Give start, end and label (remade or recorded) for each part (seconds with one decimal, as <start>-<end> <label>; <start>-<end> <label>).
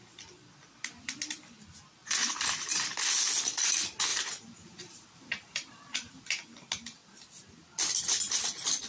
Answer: 0.0-2.0 recorded; 2.0-3.0 remade; 3.0-4.1 recorded; 4.1-6.3 remade; 6.3-8.9 recorded